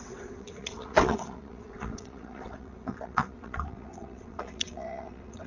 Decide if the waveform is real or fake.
fake